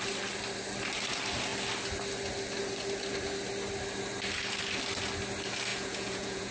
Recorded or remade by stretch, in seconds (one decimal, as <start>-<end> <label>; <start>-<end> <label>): 0.0-5.7 recorded; 5.7-6.5 remade